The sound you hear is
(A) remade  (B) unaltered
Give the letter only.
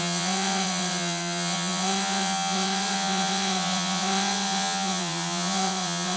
A